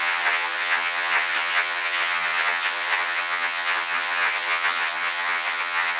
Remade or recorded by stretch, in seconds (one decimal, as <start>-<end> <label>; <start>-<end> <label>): 0.0-6.0 remade